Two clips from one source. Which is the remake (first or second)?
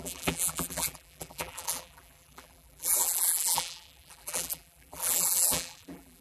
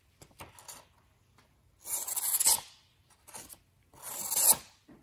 first